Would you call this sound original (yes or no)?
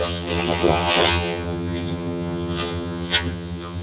no